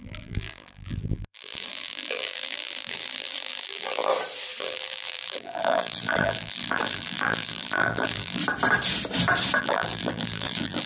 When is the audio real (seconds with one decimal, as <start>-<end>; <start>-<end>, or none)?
4.1-4.6; 8.4-9.6